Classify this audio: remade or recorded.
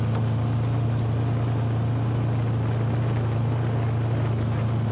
recorded